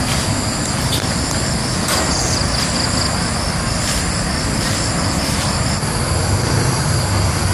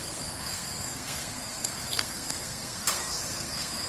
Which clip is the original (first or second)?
first